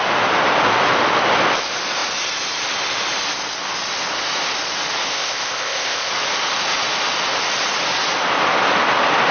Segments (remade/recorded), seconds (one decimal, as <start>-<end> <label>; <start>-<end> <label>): 0.0-5.1 recorded; 5.1-6.1 remade; 6.1-9.3 recorded